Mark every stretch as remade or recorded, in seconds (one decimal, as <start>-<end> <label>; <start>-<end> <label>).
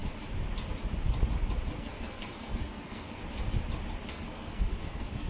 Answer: 0.0-1.8 recorded; 1.8-3.2 remade; 3.2-4.1 recorded; 4.1-5.3 remade